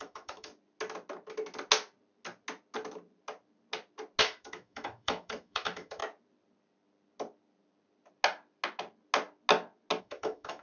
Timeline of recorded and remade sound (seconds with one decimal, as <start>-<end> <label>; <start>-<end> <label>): 0.0-0.5 remade; 0.5-4.2 recorded; 4.2-6.0 remade; 6.0-10.0 recorded; 10.0-10.6 remade